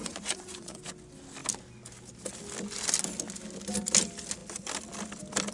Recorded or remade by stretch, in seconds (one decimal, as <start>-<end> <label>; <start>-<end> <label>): 0.0-0.8 remade; 0.8-5.5 recorded